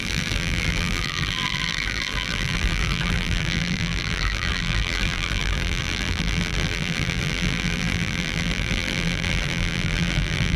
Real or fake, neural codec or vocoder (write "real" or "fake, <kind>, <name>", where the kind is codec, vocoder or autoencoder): fake, vocoder, BigVGAN v2